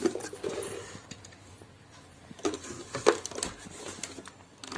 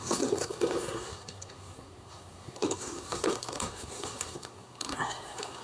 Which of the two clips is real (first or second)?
first